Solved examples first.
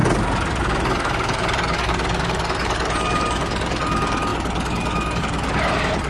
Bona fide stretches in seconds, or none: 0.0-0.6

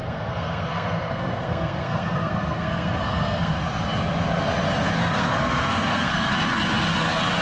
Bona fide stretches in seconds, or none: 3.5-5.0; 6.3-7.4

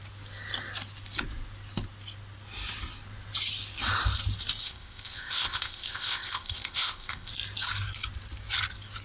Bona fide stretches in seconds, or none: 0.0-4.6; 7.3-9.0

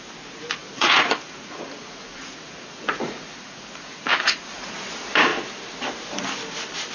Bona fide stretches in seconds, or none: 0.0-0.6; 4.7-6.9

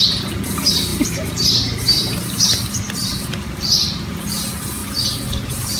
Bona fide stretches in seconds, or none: 0.0-0.9; 4.2-4.8

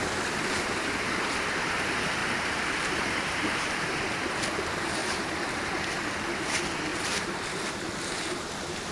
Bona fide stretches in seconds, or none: 0.0-2.2; 4.0-5.0; 5.7-6.9; 7.7-8.9